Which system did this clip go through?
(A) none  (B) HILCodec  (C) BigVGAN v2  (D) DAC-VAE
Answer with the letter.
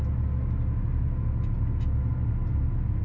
A